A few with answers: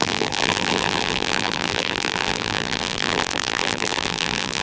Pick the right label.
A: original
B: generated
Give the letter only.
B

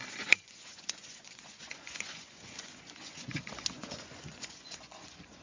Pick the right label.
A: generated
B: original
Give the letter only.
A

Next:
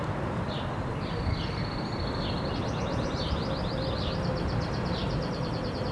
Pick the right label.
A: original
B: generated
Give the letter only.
A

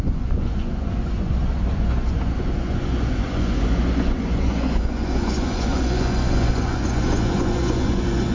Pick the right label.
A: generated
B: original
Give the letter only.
A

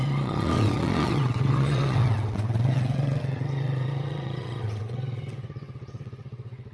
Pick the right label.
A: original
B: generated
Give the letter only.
B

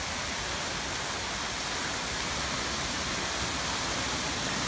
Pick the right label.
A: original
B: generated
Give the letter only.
A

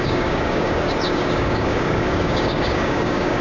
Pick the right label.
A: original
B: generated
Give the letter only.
B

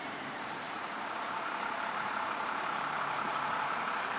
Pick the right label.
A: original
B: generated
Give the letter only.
B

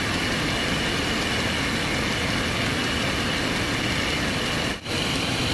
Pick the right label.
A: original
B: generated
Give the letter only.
A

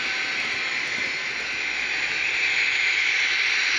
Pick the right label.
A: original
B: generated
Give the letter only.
A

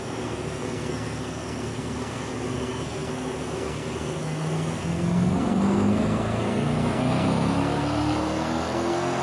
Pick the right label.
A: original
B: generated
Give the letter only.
B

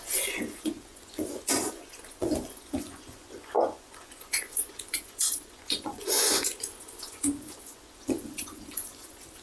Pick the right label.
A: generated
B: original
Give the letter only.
A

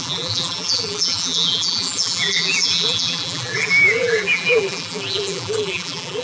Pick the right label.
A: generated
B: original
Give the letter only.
A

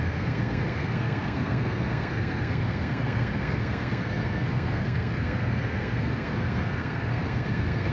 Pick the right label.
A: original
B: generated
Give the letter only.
B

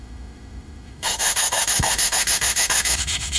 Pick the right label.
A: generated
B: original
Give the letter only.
A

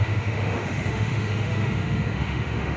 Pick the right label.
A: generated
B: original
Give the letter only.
A